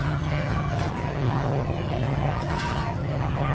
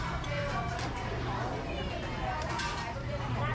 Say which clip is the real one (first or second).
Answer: second